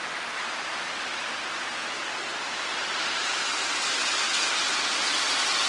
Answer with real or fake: real